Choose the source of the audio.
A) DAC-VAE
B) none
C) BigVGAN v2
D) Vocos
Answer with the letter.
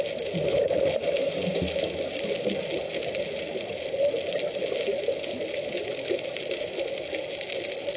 B